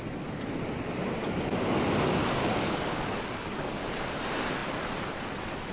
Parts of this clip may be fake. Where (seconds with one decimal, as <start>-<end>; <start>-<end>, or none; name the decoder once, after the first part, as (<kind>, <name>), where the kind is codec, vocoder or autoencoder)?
1.2-1.8 (codec, DAC); 2.2-3.6